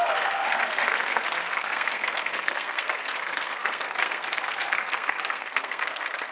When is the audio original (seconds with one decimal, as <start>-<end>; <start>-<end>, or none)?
none